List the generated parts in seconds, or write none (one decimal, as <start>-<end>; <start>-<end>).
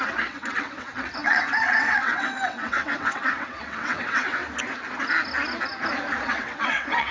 0.0-4.4; 6.2-7.1